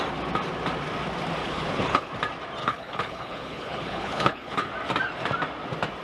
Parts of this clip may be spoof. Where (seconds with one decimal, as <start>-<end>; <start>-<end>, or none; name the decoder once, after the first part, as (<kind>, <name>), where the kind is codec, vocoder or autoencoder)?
1.4-2.1 (codec, HILCodec); 2.6-4.7